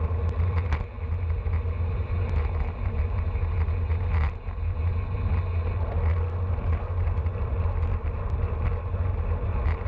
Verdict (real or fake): real